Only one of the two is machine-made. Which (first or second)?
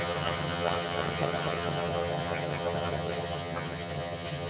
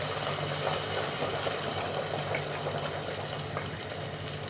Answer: first